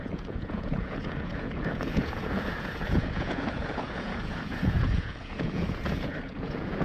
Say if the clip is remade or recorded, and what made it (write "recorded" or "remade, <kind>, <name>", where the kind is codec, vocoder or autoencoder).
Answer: remade, vocoder, Vocos